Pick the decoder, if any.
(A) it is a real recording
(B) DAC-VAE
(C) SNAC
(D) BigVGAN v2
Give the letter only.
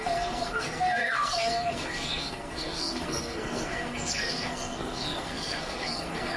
C